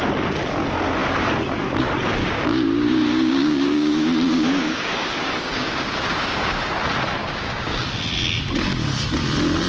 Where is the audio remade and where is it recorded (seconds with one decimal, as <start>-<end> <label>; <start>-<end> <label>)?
0.0-2.2 recorded; 2.2-6.7 remade; 6.7-7.2 recorded; 7.2-7.9 remade; 7.9-9.7 recorded